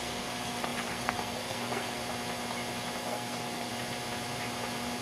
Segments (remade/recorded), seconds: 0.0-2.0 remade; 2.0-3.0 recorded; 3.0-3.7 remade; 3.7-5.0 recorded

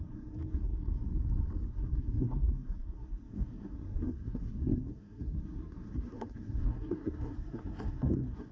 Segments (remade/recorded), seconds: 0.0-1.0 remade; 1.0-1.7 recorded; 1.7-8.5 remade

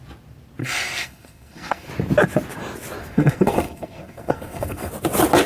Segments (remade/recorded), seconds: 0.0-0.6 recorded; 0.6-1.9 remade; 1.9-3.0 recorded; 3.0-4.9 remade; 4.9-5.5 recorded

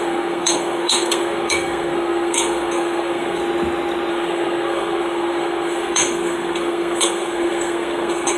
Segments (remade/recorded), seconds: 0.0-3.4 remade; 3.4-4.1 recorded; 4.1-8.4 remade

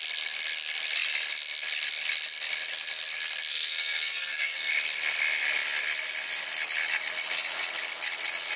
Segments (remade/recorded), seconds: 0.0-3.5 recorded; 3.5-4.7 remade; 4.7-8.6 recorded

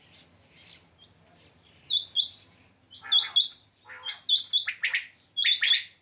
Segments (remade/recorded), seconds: 0.0-6.0 recorded

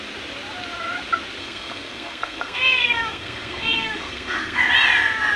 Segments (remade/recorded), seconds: 0.0-1.4 recorded; 1.4-4.6 remade; 4.6-5.4 recorded